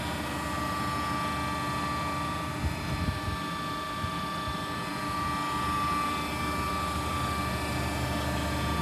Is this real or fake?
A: real